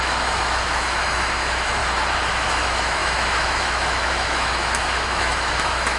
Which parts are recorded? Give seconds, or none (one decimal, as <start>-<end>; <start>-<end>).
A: 1.8-2.3